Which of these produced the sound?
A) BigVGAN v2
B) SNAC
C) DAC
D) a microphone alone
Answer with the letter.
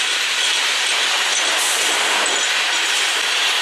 D